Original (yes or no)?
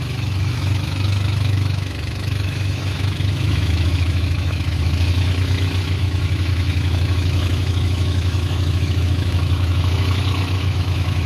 no